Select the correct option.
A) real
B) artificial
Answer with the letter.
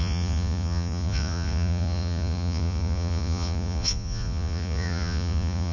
B